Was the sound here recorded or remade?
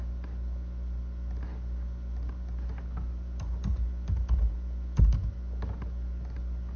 recorded